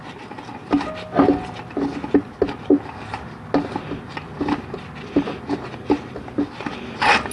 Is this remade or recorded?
recorded